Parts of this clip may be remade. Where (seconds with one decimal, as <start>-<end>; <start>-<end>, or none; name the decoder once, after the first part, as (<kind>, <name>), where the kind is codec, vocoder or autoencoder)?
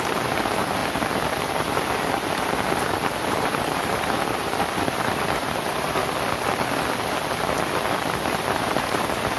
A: 0.0-0.8 (vocoder, BigVGAN v2); 3.2-6.0; 8.5-9.4